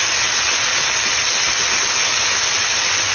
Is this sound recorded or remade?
recorded